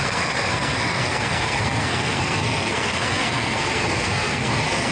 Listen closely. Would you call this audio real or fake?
fake